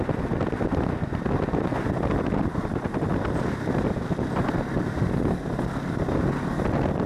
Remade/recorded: recorded